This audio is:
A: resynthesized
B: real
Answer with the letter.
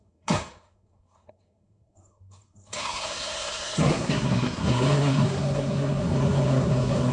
A